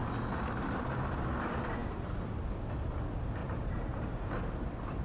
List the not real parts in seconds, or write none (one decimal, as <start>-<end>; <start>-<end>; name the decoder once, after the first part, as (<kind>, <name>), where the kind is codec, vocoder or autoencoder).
3.4-4.3 (vocoder, BigVGAN v2)